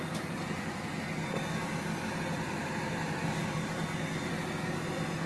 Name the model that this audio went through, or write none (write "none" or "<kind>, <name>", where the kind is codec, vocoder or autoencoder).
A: none